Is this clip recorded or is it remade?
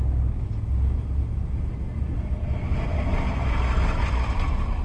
recorded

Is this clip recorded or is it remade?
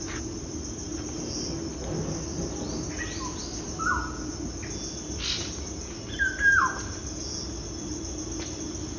recorded